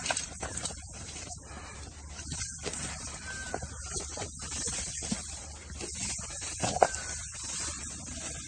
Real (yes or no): no